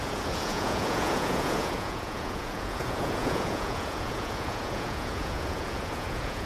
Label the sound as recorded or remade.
remade